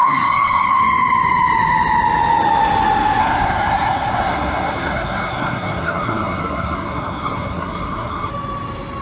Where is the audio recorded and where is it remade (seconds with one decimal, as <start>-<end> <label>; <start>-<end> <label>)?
0.0-0.8 remade; 0.8-3.2 recorded; 3.2-8.3 remade; 8.3-9.0 recorded